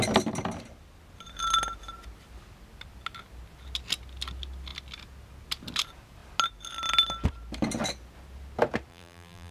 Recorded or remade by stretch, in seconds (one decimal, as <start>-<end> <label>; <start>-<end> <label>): 0.0-8.9 recorded; 8.9-9.5 remade